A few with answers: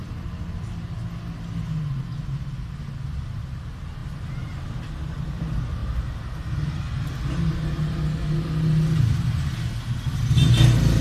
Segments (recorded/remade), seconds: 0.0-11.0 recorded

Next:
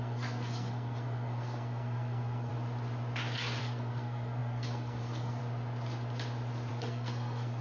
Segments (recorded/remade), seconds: 0.0-2.5 remade; 2.5-3.6 recorded; 3.6-5.4 remade; 5.4-6.7 recorded; 6.7-7.6 remade

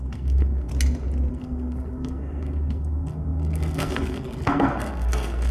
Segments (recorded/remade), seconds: 0.0-0.7 remade; 0.7-1.3 recorded; 1.3-5.5 remade

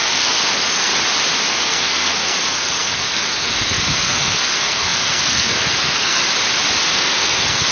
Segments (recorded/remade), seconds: 0.0-0.9 remade; 0.9-1.5 recorded; 1.5-6.2 remade; 6.2-6.9 recorded; 6.9-7.7 remade

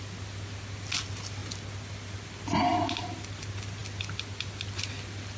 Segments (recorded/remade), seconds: 0.0-5.4 recorded

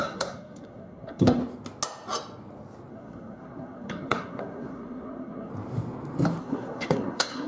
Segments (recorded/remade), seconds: 0.0-1.4 remade; 1.4-2.9 recorded; 2.9-5.5 remade; 5.5-6.4 recorded; 6.4-7.5 remade

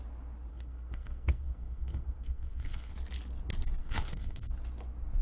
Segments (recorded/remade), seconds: 0.0-0.5 recorded; 0.5-2.9 remade; 2.9-3.8 recorded; 3.8-4.5 remade; 4.5-5.2 recorded

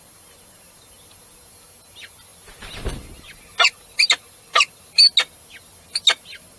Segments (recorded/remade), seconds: 0.0-6.6 recorded